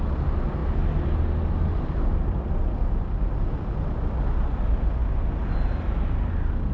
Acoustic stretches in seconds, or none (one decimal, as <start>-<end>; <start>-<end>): 0.0-6.7

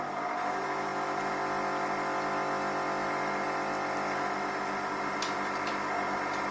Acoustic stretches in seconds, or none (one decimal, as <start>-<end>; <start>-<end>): 0.0-6.5

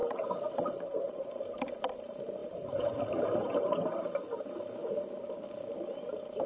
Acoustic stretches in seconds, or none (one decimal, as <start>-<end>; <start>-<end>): 1.3-2.4; 4.0-6.5

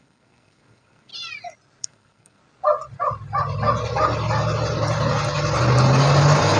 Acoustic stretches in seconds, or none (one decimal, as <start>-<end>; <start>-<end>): 1.1-1.8; 2.4-6.6

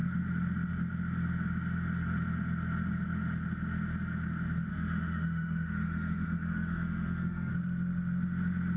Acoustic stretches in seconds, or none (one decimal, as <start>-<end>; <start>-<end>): 0.0-4.7; 7.5-8.8

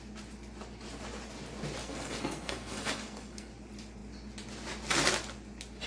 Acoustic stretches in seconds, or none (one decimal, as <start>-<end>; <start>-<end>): 0.0-1.8; 3.5-5.9

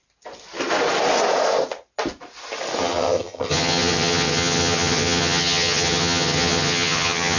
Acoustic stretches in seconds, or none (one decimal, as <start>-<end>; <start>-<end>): 0.0-2.8

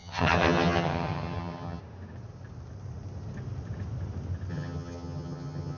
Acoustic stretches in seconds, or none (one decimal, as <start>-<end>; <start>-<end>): 1.8-4.5